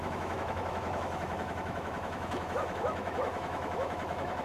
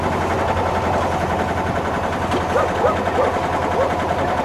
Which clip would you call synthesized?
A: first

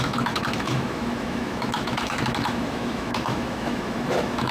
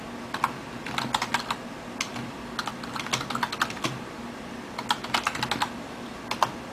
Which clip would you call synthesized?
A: first